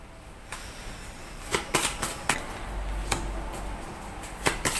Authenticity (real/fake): real